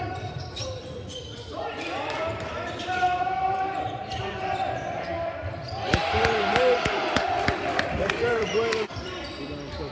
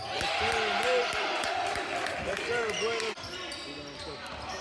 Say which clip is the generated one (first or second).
first